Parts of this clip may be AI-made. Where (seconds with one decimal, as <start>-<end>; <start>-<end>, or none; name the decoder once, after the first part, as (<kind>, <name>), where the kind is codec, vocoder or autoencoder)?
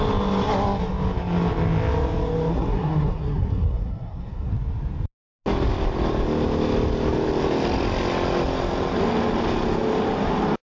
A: 2.5-4.5 (codec, SNAC)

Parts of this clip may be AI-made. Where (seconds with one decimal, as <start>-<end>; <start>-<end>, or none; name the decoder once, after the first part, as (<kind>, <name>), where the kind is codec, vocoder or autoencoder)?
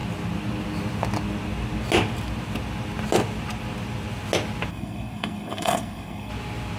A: 4.7-6.3 (codec, SNAC)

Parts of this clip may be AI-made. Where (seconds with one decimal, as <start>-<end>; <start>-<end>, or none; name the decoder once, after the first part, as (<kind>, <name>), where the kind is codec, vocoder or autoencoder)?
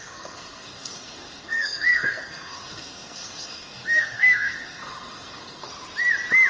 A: 0.0-5.7 (codec, SNAC)